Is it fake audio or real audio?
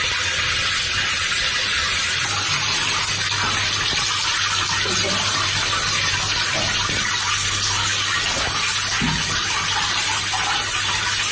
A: real